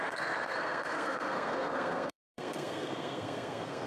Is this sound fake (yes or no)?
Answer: yes